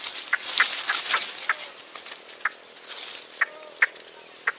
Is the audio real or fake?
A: real